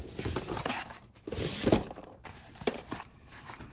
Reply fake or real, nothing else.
fake